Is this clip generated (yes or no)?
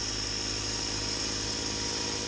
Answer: no